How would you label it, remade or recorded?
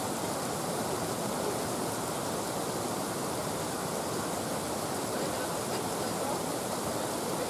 recorded